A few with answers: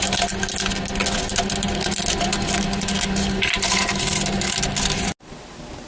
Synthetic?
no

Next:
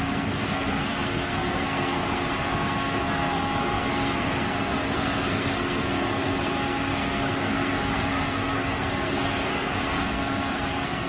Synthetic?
yes